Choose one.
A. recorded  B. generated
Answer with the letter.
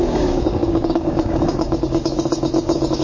B